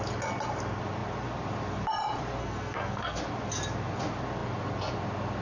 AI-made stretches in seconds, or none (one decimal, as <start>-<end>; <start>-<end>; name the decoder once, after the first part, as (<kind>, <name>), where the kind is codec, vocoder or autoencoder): 2.4-3.2 (codec, SNAC)